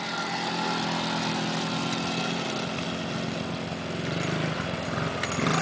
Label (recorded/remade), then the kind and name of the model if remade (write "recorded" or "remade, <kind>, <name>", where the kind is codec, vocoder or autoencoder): recorded